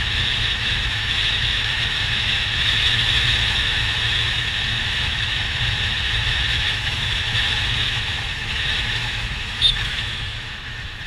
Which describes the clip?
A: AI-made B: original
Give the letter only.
A